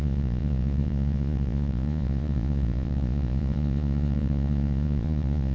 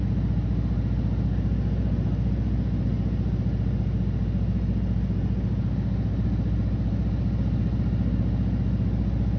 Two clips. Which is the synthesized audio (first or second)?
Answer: first